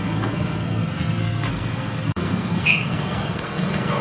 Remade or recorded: remade